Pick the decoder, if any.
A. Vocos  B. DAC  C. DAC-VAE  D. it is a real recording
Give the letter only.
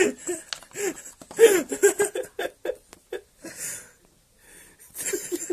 D